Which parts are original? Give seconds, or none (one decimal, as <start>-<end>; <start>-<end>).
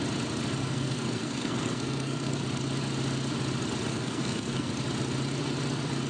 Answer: 0.0-0.6; 2.4-3.9; 4.7-6.1